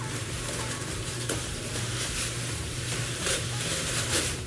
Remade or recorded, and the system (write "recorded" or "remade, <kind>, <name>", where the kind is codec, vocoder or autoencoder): remade, vocoder, BigVGAN v2